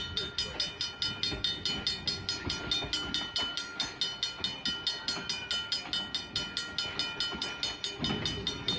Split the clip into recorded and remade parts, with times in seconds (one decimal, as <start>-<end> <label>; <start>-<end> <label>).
0.0-8.8 recorded